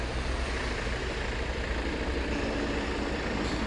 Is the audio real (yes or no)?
yes